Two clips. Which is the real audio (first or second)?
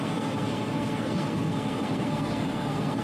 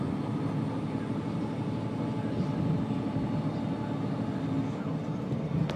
second